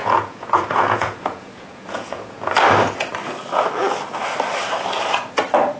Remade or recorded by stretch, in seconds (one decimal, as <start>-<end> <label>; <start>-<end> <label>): 0.0-2.5 remade; 2.5-5.8 recorded